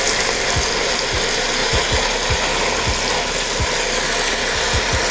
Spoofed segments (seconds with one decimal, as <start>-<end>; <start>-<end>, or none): none